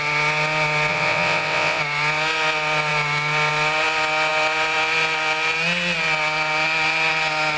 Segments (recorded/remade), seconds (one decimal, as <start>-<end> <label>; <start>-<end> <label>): 0.0-0.9 recorded; 0.9-1.8 remade; 1.8-7.6 recorded